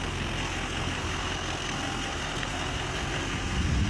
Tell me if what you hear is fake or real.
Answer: fake